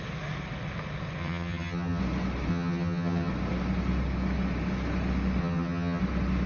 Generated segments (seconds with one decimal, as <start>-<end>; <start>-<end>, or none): 1.2-2.0; 2.5-3.3; 5.4-6.0